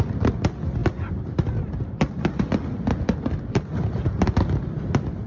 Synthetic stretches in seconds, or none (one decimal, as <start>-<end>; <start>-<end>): none